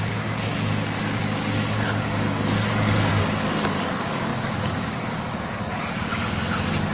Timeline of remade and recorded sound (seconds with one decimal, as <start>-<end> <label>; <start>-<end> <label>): 0.0-6.9 remade